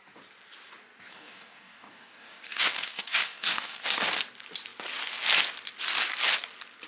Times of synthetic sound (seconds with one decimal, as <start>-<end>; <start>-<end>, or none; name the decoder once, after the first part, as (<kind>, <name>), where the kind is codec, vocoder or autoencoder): 1.1-3.9 (codec, DAC)